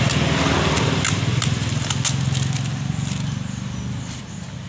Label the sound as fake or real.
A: real